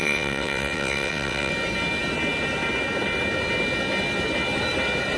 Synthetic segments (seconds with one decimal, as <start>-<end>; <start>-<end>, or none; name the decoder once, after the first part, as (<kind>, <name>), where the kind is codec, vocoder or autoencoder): 0.0-1.5 (vocoder, WaveNeXt)